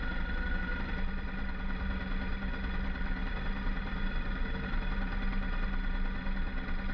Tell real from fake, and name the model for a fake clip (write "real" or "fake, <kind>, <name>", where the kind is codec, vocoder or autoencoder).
real